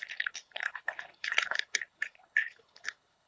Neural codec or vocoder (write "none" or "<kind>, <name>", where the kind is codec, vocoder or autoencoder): codec, HILCodec